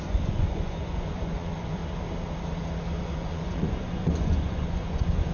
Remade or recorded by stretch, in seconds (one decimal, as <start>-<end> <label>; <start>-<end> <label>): 0.0-1.8 remade; 1.8-3.0 recorded; 3.0-5.3 remade